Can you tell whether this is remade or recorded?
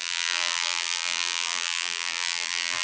remade